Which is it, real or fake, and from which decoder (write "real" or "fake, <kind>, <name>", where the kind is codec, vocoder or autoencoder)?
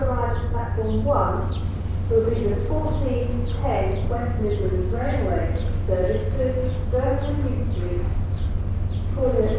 real